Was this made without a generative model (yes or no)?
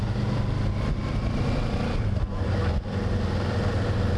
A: yes